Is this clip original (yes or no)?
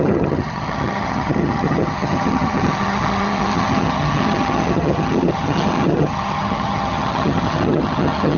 no